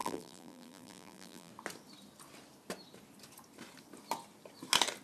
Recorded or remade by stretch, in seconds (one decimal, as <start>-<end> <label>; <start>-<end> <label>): 0.0-1.5 remade; 1.5-5.0 recorded